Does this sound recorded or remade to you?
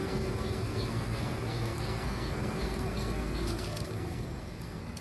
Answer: remade